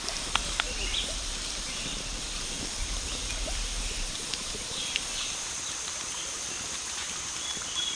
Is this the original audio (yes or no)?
no